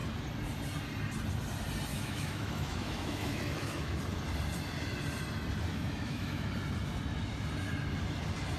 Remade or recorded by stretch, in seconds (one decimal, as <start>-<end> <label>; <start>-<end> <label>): 0.0-1.9 recorded; 1.9-4.0 remade; 4.0-5.7 recorded; 5.7-6.5 remade; 6.5-8.6 recorded